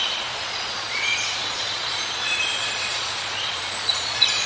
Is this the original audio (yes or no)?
no